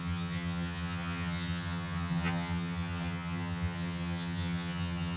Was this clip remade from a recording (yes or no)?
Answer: yes